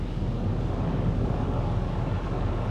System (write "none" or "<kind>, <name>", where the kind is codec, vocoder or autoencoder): codec, DAC